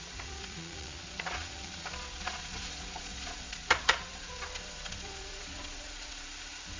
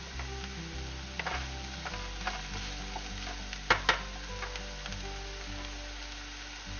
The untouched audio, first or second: second